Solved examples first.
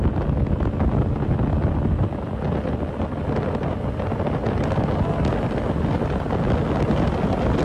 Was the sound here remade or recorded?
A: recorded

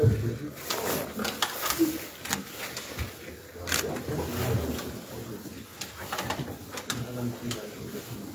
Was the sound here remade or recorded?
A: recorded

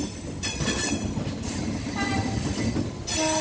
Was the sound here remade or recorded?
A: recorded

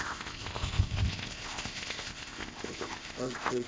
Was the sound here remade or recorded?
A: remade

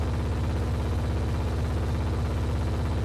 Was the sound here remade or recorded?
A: recorded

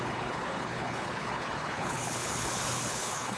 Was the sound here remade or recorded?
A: remade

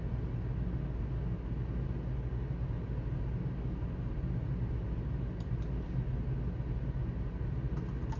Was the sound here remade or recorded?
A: recorded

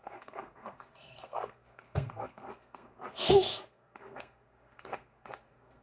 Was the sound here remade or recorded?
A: remade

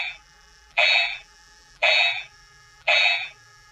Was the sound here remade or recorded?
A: remade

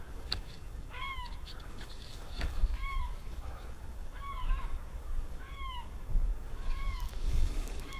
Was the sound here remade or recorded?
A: remade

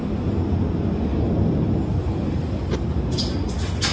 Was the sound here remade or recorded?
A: recorded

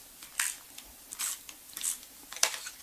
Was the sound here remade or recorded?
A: recorded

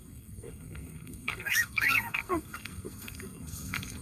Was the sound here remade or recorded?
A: remade